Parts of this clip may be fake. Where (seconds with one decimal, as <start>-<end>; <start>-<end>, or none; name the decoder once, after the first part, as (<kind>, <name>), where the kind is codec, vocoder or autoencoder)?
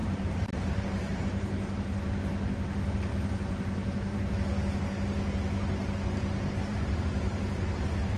0.0-1.2 (vocoder, BigVGAN v2); 3.1-4.3; 6.7-8.2